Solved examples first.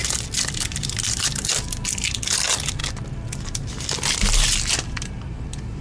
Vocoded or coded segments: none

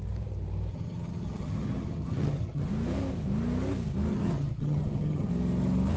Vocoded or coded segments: 0.7-2.7 (vocoder, HiFi-GAN); 4.1-5.3

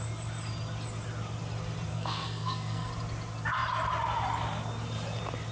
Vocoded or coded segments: 1.9-2.9 (codec, SNAC)

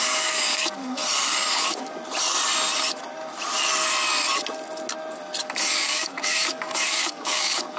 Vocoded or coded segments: 0.0-1.0 (codec, DAC); 1.6-2.0; 5.4-7.8